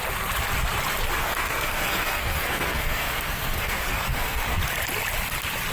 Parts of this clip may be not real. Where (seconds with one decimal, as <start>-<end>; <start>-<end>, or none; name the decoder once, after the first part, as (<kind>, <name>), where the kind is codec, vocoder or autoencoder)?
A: 1.2-4.6 (codec, SNAC)

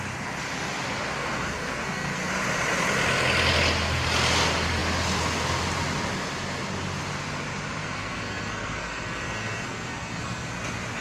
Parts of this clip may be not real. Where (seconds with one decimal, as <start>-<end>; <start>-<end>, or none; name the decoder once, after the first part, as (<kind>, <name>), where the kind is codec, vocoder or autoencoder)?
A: 1.2-2.3 (codec, SNAC); 7.8-10.5

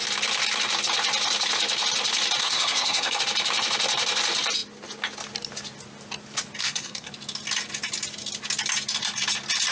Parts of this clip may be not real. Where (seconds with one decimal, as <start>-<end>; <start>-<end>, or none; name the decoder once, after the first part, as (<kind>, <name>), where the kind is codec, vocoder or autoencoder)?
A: 2.4-3.2 (codec, SNAC); 6.6-7.1

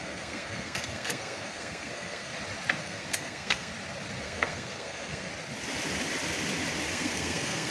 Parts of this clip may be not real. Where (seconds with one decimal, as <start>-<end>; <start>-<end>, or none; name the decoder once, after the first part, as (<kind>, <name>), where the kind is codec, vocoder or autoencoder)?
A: 0.0-2.3 (codec, SNAC); 2.8-3.7; 4.2-5.3; 6.9-7.7